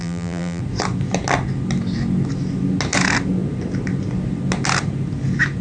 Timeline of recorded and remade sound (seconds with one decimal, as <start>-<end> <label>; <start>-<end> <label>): 0.0-0.6 remade; 0.6-5.6 recorded